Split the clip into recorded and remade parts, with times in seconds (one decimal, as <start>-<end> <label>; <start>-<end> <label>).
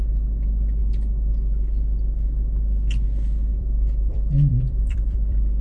0.0-3.5 recorded; 3.5-5.6 remade